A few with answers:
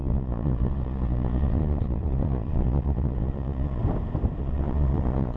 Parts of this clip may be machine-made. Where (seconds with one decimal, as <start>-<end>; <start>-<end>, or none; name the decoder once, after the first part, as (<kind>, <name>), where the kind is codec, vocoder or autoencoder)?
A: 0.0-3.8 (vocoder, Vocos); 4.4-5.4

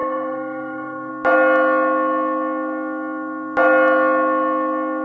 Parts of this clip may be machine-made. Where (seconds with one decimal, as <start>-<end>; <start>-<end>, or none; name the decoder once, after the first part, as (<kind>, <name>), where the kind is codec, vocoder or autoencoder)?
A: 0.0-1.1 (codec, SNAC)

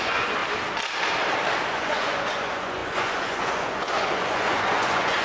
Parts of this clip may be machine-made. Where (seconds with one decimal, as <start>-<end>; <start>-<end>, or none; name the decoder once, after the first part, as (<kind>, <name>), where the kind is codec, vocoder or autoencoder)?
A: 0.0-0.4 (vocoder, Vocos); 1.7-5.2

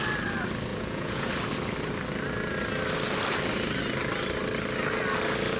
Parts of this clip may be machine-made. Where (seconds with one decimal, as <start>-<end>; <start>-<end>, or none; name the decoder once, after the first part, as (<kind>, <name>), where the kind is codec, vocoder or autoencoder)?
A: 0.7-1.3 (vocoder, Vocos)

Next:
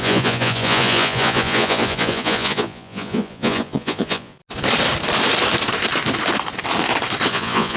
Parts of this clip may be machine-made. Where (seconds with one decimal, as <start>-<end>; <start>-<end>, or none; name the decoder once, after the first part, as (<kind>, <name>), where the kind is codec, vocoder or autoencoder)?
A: 0.0-4.4 (vocoder, Vocos); 7.3-7.8

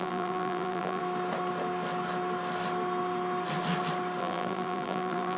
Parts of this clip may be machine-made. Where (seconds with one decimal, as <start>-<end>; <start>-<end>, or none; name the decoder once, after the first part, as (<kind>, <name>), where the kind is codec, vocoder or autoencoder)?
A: 0.0-1.0 (vocoder, BigVGAN v2); 4.2-5.4

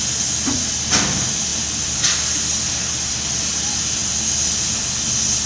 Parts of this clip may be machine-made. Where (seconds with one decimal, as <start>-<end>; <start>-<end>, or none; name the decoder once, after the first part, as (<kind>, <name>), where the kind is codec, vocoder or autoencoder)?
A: none

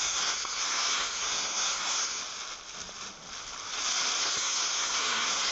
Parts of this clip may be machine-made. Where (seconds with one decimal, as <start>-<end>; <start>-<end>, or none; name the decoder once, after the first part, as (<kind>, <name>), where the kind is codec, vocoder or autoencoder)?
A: 0.0-2.2 (codec, SNAC); 4.2-5.5